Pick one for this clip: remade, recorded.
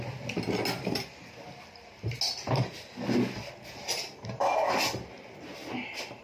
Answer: recorded